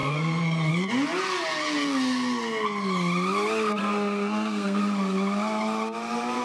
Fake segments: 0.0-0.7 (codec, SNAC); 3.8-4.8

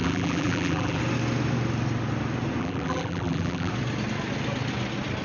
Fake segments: 0.0-1.0 (vocoder, BigVGAN v2); 2.6-3.7

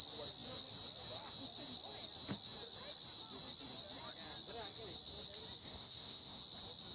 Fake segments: 5.6-6.4 (codec, SNAC)